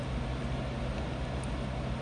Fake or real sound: real